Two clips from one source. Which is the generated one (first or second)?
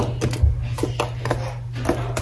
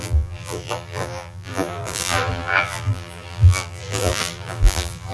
second